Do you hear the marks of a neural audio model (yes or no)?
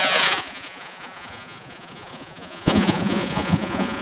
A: yes